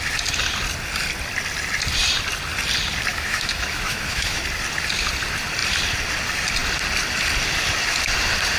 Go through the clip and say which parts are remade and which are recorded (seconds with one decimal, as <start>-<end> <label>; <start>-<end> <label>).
0.0-3.1 recorded; 3.1-4.4 remade; 4.4-8.6 recorded

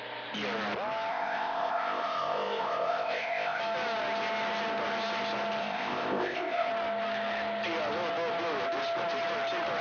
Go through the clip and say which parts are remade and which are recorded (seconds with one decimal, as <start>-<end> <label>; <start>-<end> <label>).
0.0-1.1 recorded; 1.1-3.6 remade; 3.6-5.6 recorded; 5.6-6.7 remade; 6.7-9.8 recorded

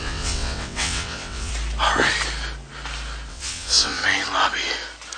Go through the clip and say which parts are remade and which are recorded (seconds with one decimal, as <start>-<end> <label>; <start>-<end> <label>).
0.0-1.5 remade; 1.5-3.3 recorded; 3.3-4.0 remade; 4.0-5.2 recorded

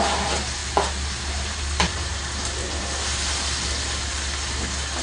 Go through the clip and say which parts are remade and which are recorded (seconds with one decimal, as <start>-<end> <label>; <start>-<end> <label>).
0.0-5.0 recorded

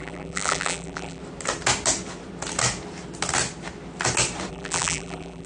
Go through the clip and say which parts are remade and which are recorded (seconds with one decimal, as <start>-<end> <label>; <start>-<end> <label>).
0.0-1.2 remade; 1.2-4.5 recorded; 4.5-5.5 remade

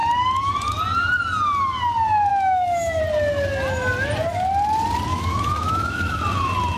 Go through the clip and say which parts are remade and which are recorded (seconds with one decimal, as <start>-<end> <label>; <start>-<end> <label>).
0.0-2.3 recorded; 2.3-3.0 remade; 3.0-5.1 recorded; 5.1-6.2 remade; 6.2-6.8 recorded

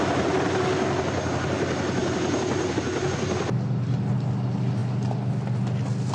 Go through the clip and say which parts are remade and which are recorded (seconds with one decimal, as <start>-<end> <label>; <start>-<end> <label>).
0.0-6.1 recorded